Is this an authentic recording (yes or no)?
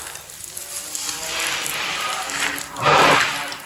yes